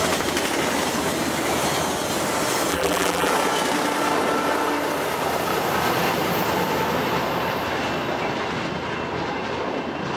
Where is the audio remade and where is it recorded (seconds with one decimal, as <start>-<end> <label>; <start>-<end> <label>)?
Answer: 0.0-2.7 recorded; 2.7-3.3 remade; 3.3-10.2 recorded